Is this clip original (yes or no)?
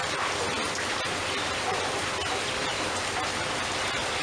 yes